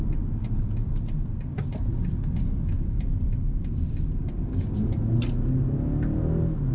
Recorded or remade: recorded